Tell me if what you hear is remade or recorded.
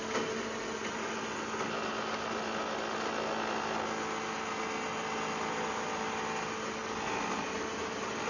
recorded